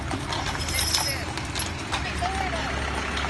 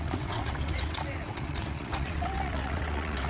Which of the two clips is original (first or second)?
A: first